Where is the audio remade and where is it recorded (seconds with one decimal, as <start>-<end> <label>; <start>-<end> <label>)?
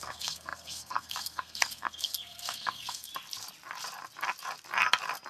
0.0-3.1 remade; 3.1-5.3 recorded